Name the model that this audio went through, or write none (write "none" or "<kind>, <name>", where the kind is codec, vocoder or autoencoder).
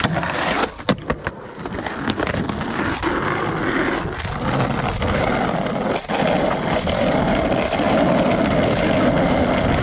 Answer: none